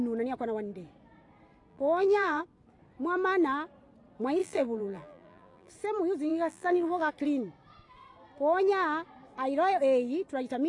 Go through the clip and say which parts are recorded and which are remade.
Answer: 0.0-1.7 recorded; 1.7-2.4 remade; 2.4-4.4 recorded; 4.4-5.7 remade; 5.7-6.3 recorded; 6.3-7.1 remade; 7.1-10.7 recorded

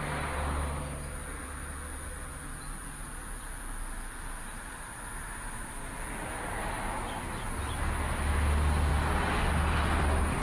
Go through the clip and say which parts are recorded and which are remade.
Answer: 0.0-10.4 recorded

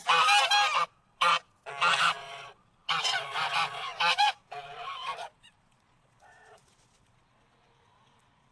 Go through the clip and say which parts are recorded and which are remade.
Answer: 0.0-0.8 recorded; 0.8-1.3 remade; 1.3-2.0 recorded; 2.0-8.5 remade

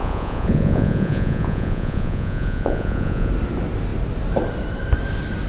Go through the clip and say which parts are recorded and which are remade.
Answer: 0.0-3.3 remade; 3.3-5.5 recorded

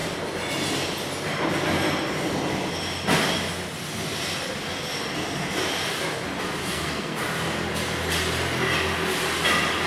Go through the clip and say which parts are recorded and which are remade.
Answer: 0.0-6.6 recorded; 6.6-7.2 remade; 7.2-9.9 recorded

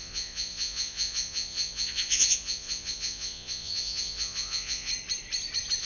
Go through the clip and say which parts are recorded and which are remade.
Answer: 0.0-4.9 remade; 4.9-5.8 recorded